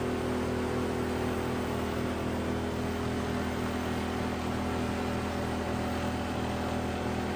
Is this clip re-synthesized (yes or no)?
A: no